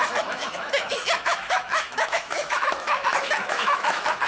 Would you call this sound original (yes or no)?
no